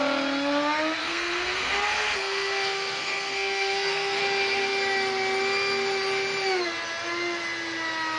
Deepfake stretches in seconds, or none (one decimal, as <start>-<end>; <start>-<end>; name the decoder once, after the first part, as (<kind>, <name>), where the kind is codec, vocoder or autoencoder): 1.0-4.2 (codec, SNAC)